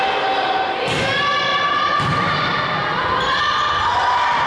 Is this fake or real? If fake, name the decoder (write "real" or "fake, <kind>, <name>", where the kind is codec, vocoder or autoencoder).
real